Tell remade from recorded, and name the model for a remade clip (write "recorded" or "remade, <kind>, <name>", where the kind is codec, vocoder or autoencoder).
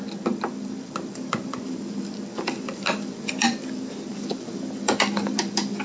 remade, vocoder, BigVGAN v2